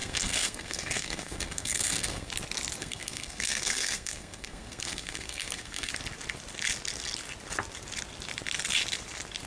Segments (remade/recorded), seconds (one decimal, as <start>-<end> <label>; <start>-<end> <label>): 0.0-2.3 remade; 2.3-2.8 recorded; 2.8-5.9 remade; 5.9-9.5 recorded